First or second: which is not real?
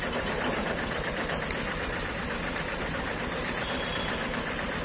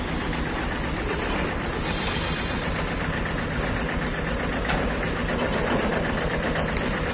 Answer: first